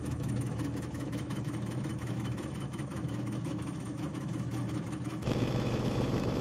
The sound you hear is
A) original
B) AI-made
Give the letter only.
B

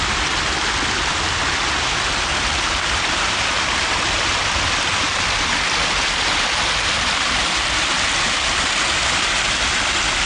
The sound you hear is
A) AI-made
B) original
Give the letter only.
B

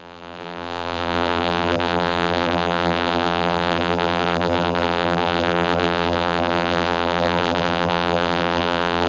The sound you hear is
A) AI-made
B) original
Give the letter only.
A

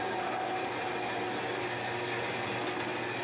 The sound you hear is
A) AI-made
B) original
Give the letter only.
B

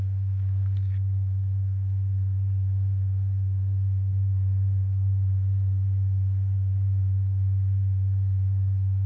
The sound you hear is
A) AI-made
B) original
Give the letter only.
A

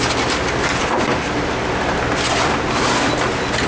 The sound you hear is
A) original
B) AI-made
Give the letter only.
A